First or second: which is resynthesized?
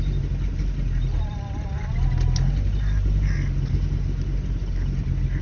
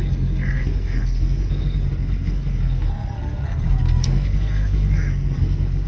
second